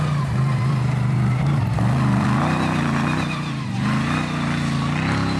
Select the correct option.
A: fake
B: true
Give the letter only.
A